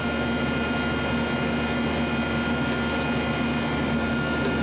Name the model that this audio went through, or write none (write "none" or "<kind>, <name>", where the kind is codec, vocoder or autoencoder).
none